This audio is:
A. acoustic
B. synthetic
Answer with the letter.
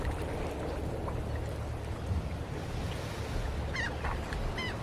A